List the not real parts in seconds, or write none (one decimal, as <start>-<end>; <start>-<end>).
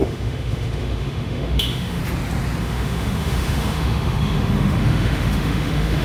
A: 0.0-2.0; 2.6-6.0